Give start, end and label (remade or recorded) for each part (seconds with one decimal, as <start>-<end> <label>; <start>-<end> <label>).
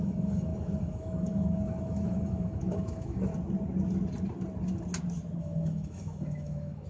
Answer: 0.0-3.3 remade; 3.3-5.4 recorded; 5.4-6.9 remade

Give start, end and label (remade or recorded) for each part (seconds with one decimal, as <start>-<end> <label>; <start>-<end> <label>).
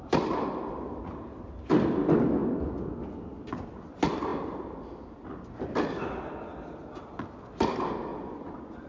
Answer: 0.0-8.1 recorded; 8.1-8.9 remade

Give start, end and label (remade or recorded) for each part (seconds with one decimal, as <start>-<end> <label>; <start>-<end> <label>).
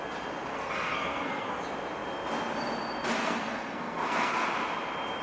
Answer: 0.0-0.5 recorded; 0.5-1.6 remade; 1.6-3.2 recorded; 3.2-4.3 remade; 4.3-5.2 recorded